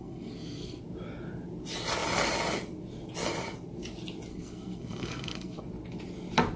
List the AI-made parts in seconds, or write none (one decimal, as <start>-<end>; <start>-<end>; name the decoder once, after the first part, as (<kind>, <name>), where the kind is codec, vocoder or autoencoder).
0.0-0.8 (codec, SNAC); 4.3-5.6